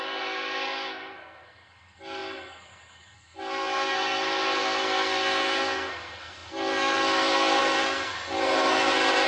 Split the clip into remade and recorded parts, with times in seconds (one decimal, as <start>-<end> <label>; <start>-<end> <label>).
0.0-9.3 remade